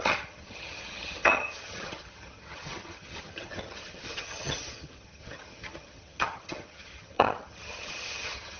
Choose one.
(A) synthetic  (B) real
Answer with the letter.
A